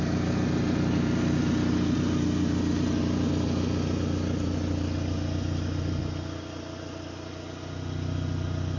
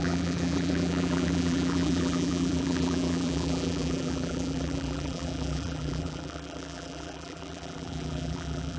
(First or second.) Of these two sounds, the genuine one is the first